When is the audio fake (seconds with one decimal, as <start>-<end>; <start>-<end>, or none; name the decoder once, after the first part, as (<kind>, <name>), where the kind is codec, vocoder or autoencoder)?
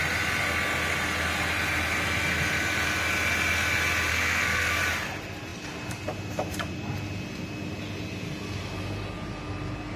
4.1-4.8 (codec, SNAC)